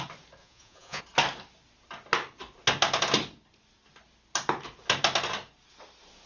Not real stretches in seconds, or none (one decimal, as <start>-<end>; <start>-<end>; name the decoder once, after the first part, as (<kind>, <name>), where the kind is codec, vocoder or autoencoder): 0.4-1.0 (vocoder, Vocos)